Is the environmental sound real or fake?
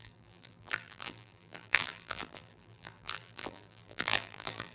fake